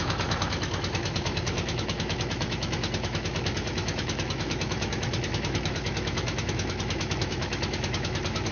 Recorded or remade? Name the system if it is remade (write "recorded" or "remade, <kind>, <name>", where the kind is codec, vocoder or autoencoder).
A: remade, autoencoder, DAC-VAE